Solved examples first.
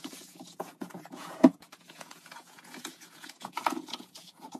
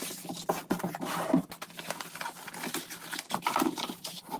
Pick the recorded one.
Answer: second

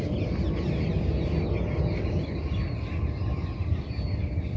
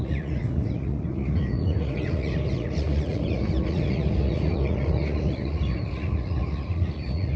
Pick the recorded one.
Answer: first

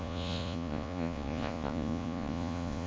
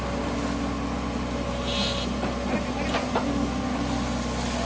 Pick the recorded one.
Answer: second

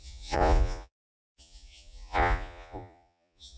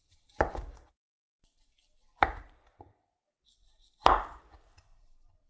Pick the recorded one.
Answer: second